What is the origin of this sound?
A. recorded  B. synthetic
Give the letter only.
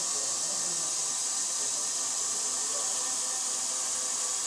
A